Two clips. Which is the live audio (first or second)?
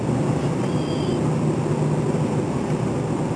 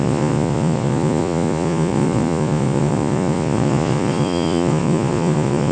first